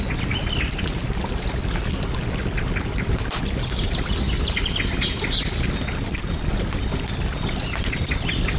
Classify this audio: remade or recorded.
recorded